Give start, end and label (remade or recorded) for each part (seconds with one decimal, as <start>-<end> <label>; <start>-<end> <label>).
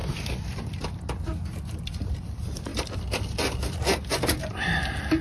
0.0-5.2 remade